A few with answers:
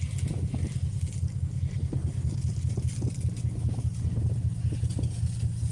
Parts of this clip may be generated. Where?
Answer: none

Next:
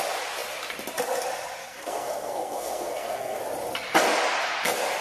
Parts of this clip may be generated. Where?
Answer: 1.6-3.4 (codec, SNAC)

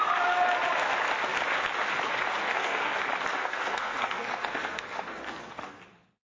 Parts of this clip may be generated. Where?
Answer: 2.4-3.0 (codec, SNAC); 3.4-5.8

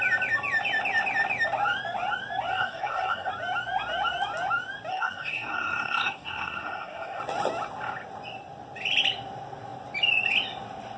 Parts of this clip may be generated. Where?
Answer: 2.5-3.3 (codec, SNAC); 4.9-7.2

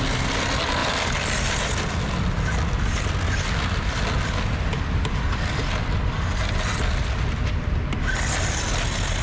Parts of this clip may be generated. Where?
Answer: none